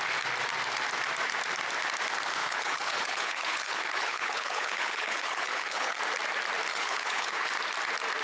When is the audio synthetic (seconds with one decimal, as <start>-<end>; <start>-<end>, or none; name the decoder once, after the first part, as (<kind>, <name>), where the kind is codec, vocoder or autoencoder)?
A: 2.4-6.0 (codec, HILCodec); 6.7-7.5